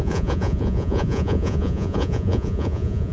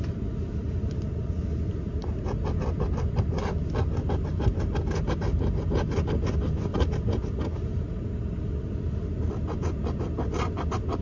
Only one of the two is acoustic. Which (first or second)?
second